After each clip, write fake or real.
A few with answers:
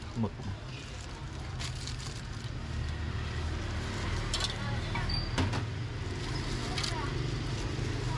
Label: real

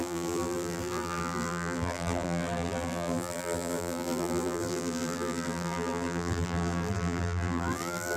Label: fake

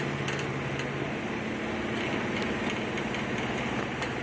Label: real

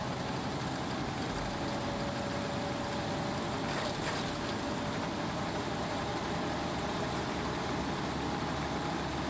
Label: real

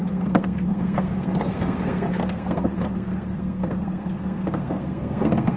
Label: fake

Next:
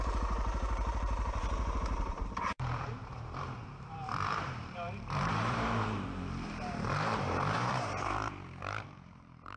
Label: fake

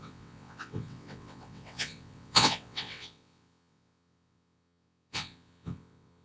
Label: fake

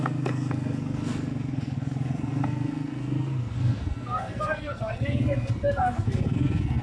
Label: fake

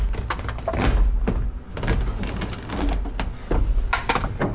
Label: real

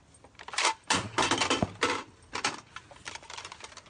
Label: real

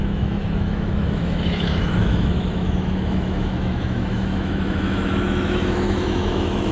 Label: fake